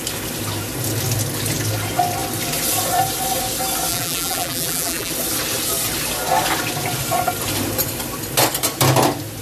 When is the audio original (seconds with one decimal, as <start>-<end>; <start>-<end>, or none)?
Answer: 0.0-3.9; 5.1-9.4